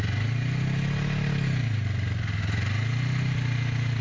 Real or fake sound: real